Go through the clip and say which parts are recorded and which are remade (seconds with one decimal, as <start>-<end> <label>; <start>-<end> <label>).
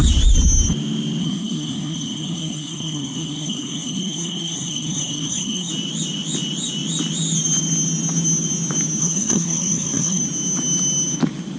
0.0-1.2 recorded; 1.2-5.7 remade; 5.7-9.0 recorded; 9.0-10.2 remade; 10.2-11.6 recorded